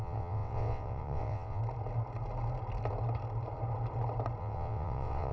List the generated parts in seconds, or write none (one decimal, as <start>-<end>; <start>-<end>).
0.0-1.6; 4.4-5.3